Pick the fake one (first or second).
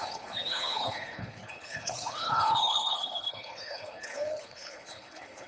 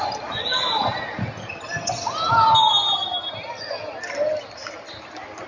first